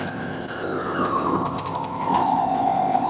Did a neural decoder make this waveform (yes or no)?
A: yes